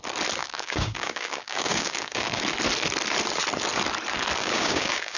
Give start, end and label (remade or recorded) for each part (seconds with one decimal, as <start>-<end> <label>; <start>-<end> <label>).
0.0-0.4 recorded; 0.4-2.4 remade; 2.4-4.4 recorded; 4.4-5.2 remade